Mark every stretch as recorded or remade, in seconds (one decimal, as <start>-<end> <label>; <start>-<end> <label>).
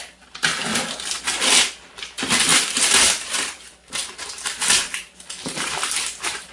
0.0-2.5 recorded; 2.5-6.5 remade